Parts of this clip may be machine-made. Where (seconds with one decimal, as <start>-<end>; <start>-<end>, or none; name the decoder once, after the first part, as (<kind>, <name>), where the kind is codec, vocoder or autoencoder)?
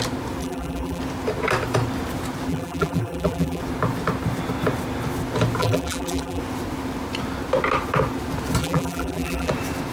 0.4-1.0 (vocoder, BigVGAN v2); 2.5-3.6; 5.6-6.4; 8.6-9.5